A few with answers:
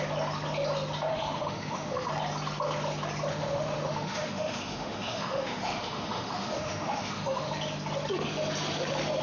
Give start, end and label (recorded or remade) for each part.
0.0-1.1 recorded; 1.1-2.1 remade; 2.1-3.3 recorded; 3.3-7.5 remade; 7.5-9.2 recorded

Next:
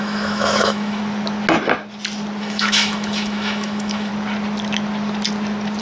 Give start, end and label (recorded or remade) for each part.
0.0-1.0 remade; 1.0-2.4 recorded; 2.4-4.1 remade; 4.1-5.8 recorded